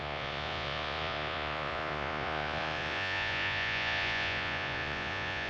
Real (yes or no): no